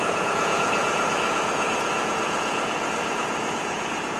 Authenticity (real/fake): fake